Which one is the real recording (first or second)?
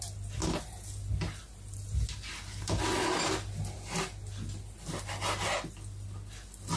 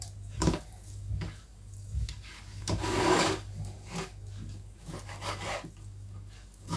first